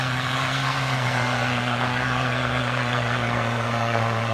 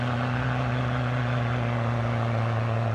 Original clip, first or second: second